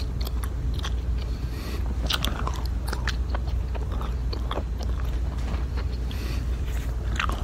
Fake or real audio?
real